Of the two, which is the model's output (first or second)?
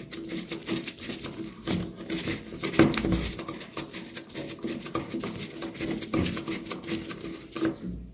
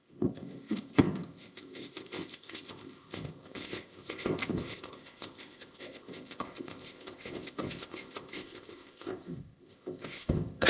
second